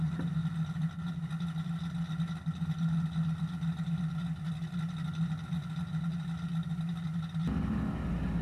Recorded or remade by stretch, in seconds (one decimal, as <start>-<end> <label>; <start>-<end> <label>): 0.0-8.4 recorded